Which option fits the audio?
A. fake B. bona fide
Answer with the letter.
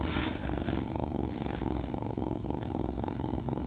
A